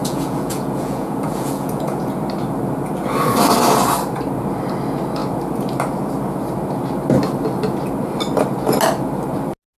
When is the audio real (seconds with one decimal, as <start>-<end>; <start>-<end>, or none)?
2.1-9.8